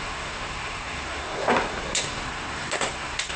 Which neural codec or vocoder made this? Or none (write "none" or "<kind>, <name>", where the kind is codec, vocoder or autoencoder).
codec, SNAC